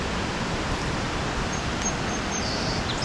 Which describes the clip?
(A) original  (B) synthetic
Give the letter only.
B